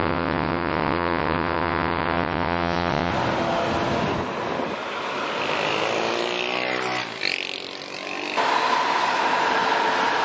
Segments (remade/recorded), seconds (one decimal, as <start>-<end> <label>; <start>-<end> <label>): 0.0-3.1 remade; 3.1-10.2 recorded